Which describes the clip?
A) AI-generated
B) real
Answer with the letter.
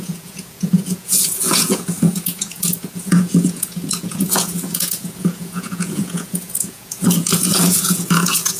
A